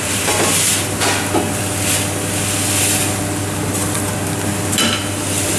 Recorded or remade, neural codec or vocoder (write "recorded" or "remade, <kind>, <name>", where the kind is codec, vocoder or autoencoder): recorded